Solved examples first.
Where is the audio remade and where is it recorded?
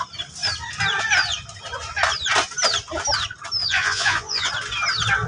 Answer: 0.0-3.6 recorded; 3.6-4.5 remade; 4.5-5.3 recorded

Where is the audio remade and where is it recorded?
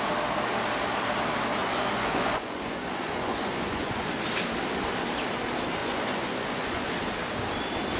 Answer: 0.0-1.6 recorded; 1.6-4.1 remade; 4.1-5.8 recorded; 5.8-6.9 remade; 6.9-8.0 recorded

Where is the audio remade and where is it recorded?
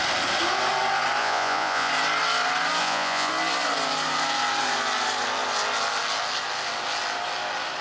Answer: 0.0-1.2 recorded; 1.2-1.9 remade; 1.9-2.8 recorded; 2.8-3.3 remade; 3.3-7.8 recorded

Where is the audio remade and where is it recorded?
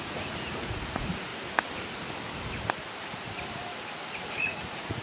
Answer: 0.0-1.3 remade; 1.3-4.3 recorded; 4.3-5.0 remade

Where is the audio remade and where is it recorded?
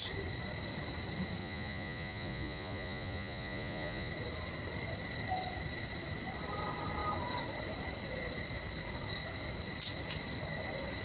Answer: 0.0-1.4 recorded; 1.4-4.1 remade; 4.1-11.0 recorded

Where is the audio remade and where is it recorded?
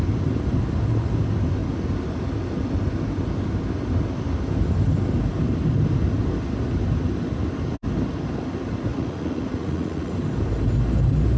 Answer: 0.0-8.9 recorded; 8.9-10.1 remade; 10.1-11.4 recorded